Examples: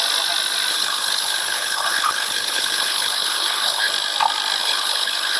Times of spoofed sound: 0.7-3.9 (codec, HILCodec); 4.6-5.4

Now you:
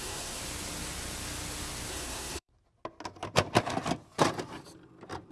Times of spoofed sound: 0.0-0.4 (codec, SNAC); 1.9-2.5

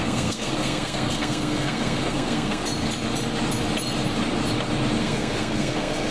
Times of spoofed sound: 0.0-2.6 (codec, SNAC); 5.0-6.1